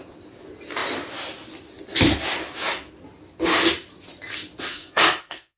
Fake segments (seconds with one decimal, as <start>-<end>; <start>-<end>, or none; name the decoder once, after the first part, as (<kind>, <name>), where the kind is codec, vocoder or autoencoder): 4.7-5.6 (codec, SNAC)